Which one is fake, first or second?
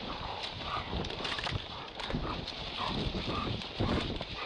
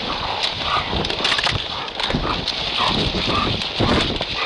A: first